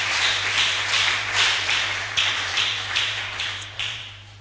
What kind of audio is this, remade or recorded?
remade